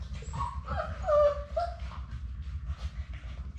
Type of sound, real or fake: real